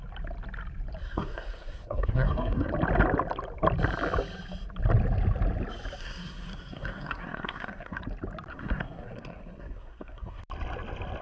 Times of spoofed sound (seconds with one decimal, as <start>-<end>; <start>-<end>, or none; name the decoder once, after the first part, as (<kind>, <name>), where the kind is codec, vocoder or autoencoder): 1.0-2.7 (codec, SNAC); 6.0-8.0; 8.5-10.4